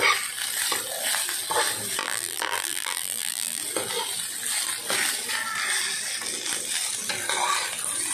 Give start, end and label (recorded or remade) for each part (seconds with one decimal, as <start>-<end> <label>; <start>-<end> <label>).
0.0-2.0 recorded; 2.0-3.6 remade; 3.6-8.1 recorded